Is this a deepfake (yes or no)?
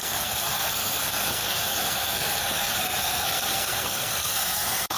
yes